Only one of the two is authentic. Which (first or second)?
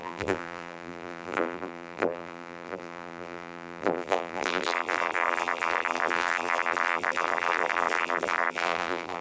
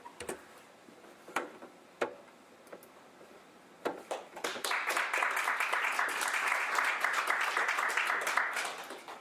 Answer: second